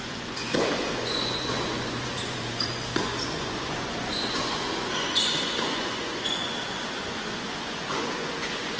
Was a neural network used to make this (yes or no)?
yes